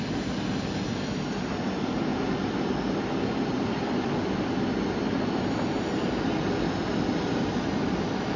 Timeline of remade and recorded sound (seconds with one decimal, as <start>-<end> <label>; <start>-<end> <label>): 0.0-8.4 recorded